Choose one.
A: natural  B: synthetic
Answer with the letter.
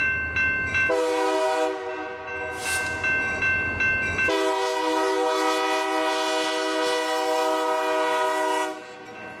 A